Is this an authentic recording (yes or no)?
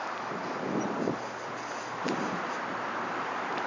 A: yes